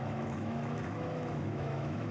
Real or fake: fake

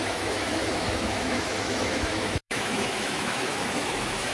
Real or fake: fake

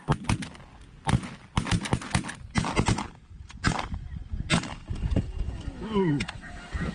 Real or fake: real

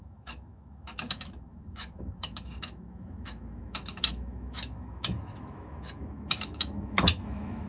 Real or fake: fake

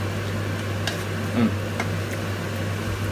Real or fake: real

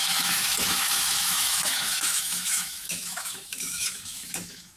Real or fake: fake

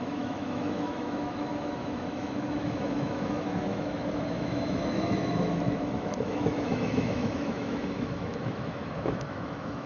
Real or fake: fake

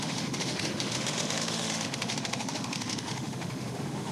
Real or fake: fake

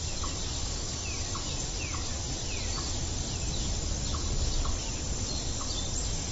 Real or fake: real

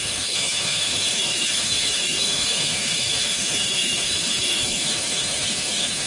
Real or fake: fake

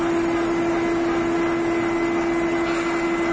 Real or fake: real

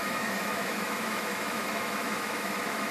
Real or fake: fake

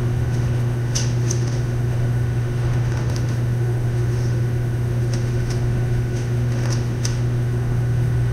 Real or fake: fake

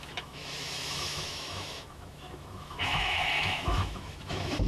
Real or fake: fake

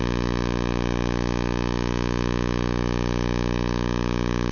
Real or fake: fake